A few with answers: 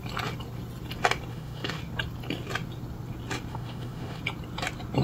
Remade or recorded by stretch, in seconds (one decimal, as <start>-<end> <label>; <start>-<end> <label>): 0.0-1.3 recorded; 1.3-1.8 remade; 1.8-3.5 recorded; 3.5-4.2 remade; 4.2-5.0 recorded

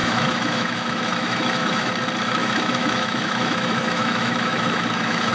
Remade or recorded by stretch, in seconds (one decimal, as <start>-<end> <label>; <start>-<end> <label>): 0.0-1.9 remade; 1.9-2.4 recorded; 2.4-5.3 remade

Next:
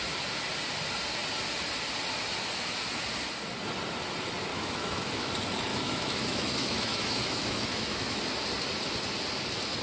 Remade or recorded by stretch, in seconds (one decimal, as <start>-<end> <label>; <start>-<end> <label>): 0.0-4.5 recorded; 4.5-5.3 remade; 5.3-5.7 recorded; 5.7-8.2 remade; 8.2-9.8 recorded